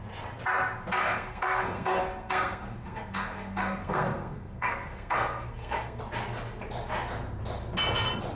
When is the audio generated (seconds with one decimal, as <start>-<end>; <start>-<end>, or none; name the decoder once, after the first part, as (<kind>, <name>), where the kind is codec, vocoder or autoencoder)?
1.0-6.0 (codec, SNAC)